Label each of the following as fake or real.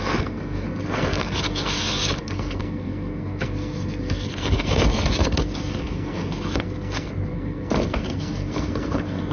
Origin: fake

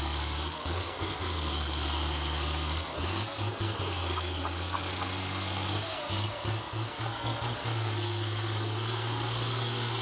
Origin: fake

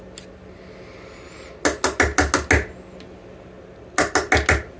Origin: real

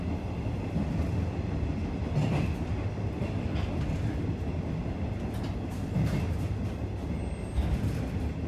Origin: real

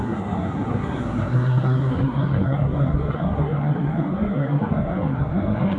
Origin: fake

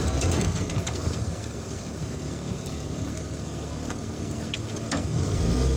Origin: fake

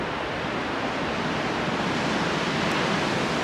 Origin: real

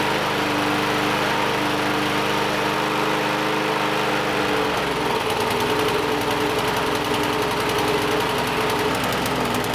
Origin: real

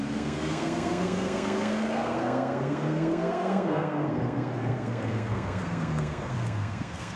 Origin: fake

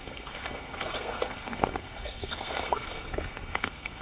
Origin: fake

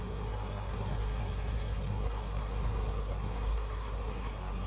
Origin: fake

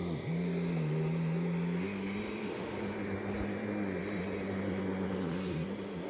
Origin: real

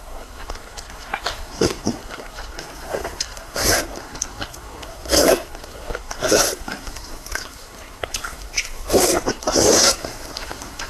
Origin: fake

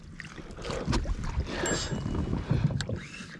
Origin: real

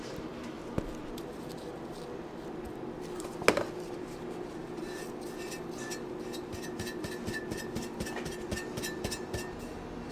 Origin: real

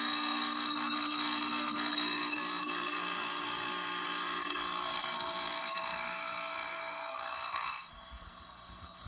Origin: fake